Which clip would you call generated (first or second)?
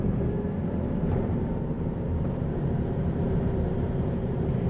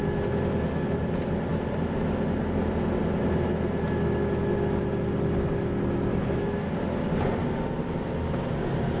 first